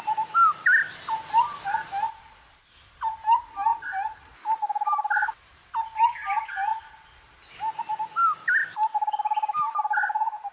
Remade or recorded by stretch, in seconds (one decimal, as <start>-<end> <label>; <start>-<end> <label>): 0.0-6.7 recorded; 6.7-7.8 remade; 7.8-10.5 recorded